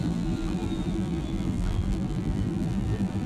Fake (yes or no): yes